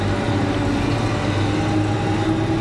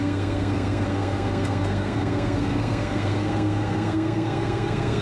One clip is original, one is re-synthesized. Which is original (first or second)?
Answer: first